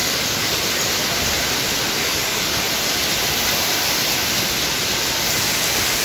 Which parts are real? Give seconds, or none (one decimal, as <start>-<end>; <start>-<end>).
0.6-2.0; 2.6-6.0